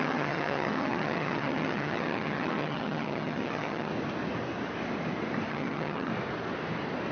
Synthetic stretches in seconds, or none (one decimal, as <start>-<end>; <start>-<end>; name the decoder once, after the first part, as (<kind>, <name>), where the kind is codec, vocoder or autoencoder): 0.0-3.9 (vocoder, HiFi-GAN); 5.5-6.1